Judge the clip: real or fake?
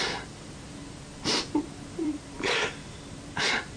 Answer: fake